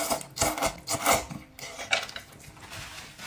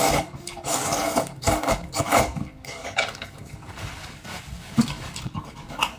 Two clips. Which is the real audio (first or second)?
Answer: first